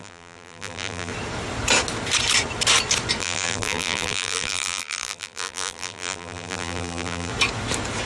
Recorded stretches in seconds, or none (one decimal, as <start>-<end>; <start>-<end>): 1.1-3.2; 7.3-8.1